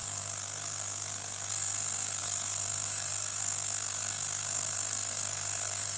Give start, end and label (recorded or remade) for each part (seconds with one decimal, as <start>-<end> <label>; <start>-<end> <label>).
0.0-6.0 remade